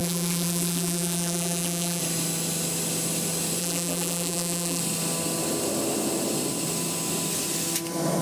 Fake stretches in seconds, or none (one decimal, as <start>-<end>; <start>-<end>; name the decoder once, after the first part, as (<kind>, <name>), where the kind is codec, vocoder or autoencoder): 0.0-2.0 (vocoder, BigVGAN v2); 3.6-4.8